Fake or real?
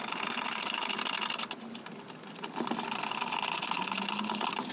real